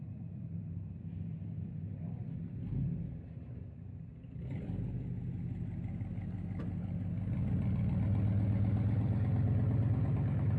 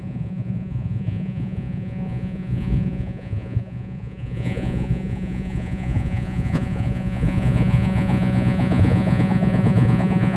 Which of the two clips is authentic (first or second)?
first